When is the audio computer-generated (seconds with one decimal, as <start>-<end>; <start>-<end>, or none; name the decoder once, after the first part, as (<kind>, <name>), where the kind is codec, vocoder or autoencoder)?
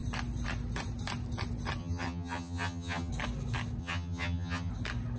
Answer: 1.8-3.1 (vocoder, HiFi-GAN); 3.8-4.7